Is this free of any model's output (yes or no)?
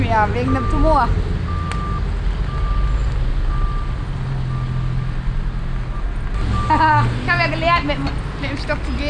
yes